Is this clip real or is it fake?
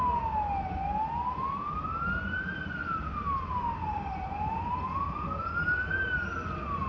real